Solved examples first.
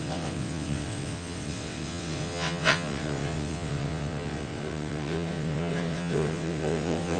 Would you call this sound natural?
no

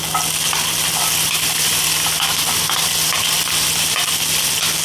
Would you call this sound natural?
yes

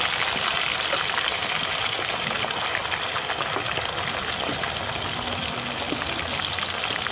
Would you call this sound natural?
yes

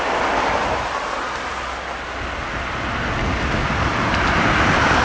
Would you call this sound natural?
yes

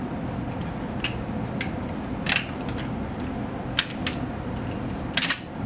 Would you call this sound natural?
yes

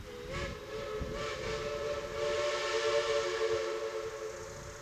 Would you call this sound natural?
yes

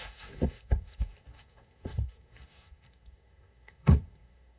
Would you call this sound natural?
no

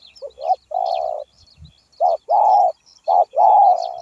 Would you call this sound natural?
yes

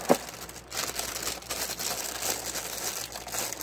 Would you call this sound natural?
yes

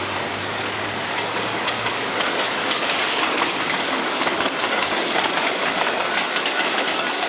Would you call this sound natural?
no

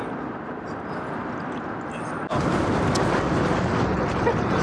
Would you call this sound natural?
yes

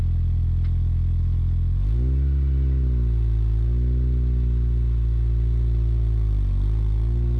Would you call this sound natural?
yes